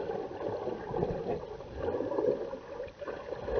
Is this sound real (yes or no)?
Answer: yes